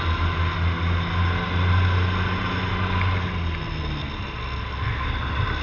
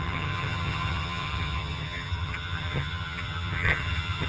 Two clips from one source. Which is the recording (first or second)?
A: first